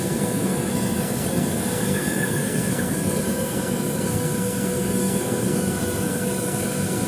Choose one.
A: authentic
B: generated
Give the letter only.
B